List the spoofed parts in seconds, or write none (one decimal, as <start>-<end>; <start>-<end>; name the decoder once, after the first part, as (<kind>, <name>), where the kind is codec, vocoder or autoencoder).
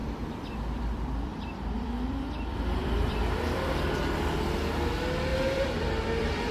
0.0-3.9 (vocoder, BigVGAN v2); 5.3-6.5